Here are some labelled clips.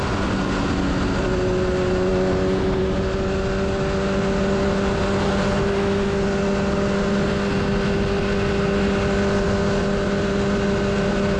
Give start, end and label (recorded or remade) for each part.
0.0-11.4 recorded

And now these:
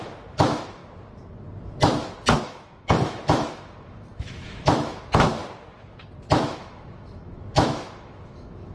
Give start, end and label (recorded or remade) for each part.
0.0-0.8 remade; 0.8-2.4 recorded; 2.4-5.4 remade; 5.4-6.3 recorded; 6.3-8.7 remade

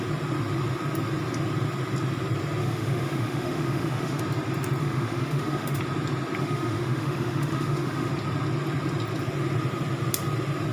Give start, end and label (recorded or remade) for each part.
0.0-2.6 recorded; 2.6-4.2 remade; 4.2-4.8 recorded; 4.8-5.8 remade; 5.8-6.4 recorded; 6.4-8.1 remade; 8.1-10.7 recorded

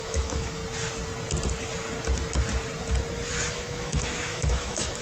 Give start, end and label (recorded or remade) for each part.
0.0-0.6 remade; 0.6-3.5 recorded; 3.5-5.0 remade

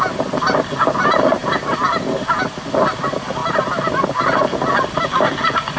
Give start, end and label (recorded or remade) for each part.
0.0-5.8 recorded

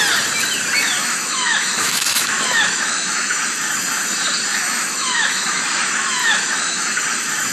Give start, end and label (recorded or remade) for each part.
0.0-1.0 recorded; 1.0-3.4 remade; 3.4-4.5 recorded; 4.5-5.6 remade; 5.6-6.2 recorded; 6.2-6.9 remade; 6.9-7.5 recorded

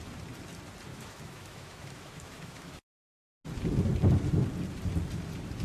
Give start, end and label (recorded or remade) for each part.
0.0-0.9 recorded; 0.9-3.2 remade; 3.2-5.6 recorded

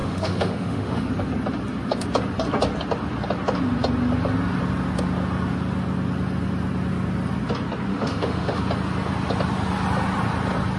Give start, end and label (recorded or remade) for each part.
0.0-1.1 remade; 1.1-7.9 recorded; 7.9-8.6 remade; 8.6-10.8 recorded